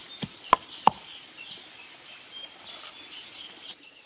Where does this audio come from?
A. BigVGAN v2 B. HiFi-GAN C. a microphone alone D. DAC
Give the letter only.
C